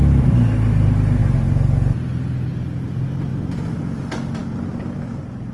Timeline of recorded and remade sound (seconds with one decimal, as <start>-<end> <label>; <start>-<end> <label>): 0.0-3.3 recorded; 3.3-3.8 remade; 3.8-5.5 recorded